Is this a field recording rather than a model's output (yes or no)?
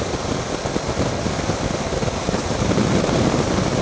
yes